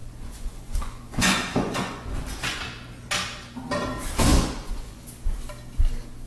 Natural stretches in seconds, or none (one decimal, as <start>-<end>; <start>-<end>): 2.6-4.3; 5.0-6.3